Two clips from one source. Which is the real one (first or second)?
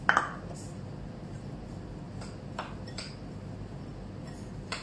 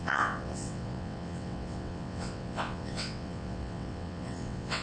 first